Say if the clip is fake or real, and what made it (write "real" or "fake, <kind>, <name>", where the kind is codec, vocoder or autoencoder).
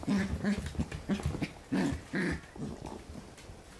real